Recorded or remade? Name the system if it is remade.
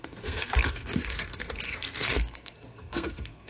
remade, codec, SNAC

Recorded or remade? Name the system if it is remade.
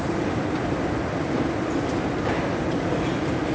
recorded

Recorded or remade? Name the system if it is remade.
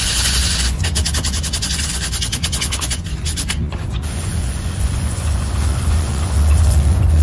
remade, vocoder, Vocos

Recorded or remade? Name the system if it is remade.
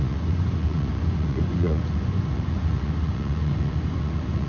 remade, vocoder, Vocos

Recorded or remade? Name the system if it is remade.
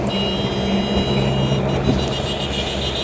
recorded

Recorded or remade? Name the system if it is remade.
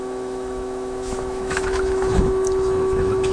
remade, autoencoder, DAC-VAE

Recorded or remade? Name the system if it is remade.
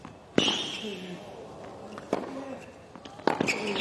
recorded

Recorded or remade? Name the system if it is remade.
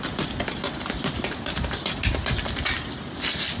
recorded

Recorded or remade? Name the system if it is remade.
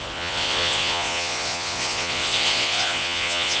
remade, vocoder, Vocos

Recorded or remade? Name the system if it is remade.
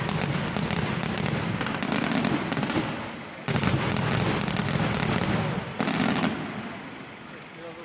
recorded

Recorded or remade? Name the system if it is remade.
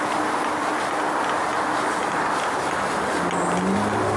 recorded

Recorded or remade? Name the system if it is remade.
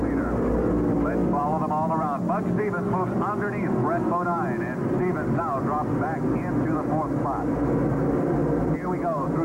recorded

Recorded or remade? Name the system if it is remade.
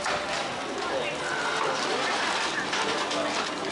recorded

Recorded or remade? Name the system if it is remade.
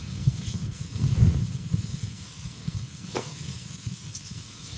remade, codec, SNAC